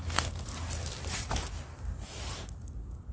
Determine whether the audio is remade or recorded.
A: recorded